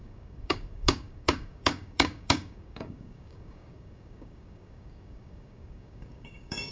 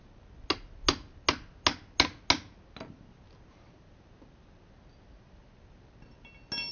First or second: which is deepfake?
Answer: first